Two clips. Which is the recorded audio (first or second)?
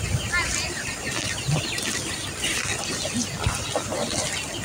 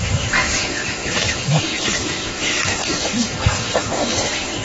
first